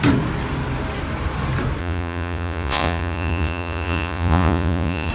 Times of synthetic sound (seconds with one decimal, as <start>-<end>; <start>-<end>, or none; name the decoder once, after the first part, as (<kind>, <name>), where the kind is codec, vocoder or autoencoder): 1.8-5.1 (vocoder, Vocos)